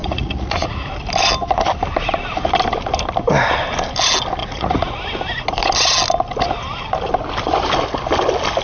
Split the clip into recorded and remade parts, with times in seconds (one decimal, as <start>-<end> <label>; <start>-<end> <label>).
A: 0.0-0.9 remade; 0.9-4.4 recorded; 4.4-4.9 remade; 4.9-8.6 recorded